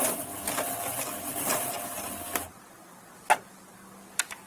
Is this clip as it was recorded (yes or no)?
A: yes